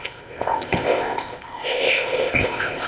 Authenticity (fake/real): fake